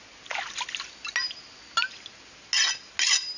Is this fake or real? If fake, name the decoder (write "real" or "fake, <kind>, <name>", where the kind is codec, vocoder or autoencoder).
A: real